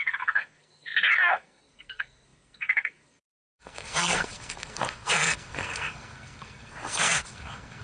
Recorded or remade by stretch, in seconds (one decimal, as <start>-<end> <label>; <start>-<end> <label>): 0.0-7.8 remade